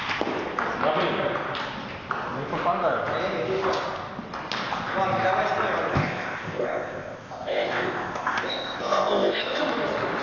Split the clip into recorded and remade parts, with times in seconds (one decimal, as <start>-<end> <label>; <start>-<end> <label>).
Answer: 0.0-5.9 recorded; 5.9-9.6 remade; 9.6-10.2 recorded